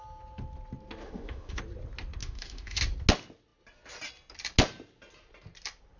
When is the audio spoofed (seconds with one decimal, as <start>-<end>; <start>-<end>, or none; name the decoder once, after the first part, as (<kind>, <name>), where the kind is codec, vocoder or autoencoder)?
1.0-1.6 (autoencoder, DAC-VAE); 2.2-2.8